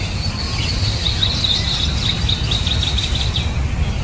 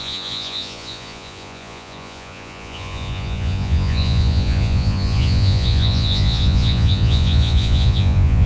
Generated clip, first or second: second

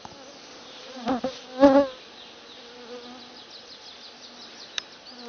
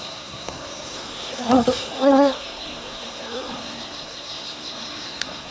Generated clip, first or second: second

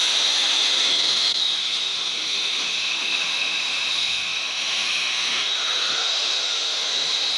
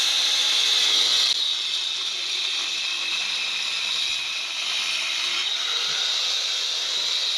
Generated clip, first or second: first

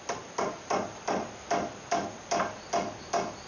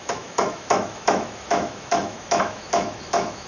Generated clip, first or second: second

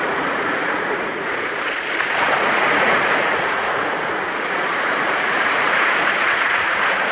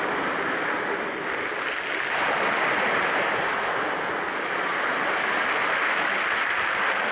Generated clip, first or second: first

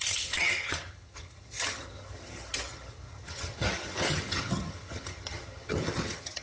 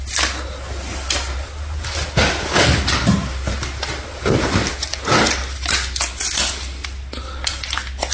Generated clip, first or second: first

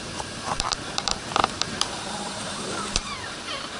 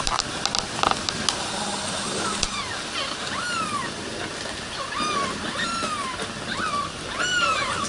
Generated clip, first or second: first